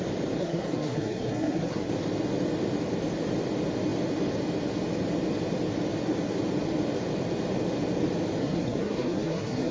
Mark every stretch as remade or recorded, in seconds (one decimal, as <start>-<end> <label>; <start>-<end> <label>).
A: 0.0-0.4 recorded; 0.4-1.9 remade; 1.9-8.4 recorded; 8.4-9.7 remade